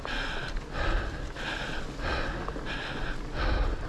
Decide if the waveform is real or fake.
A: real